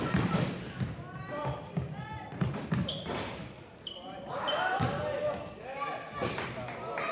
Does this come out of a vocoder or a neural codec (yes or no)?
no